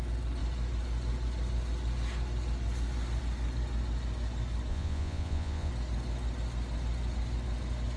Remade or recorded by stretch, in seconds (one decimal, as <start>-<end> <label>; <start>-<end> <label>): 0.0-4.7 recorded; 4.7-5.7 remade; 5.7-8.0 recorded